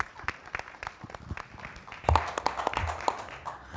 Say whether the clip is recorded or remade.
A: recorded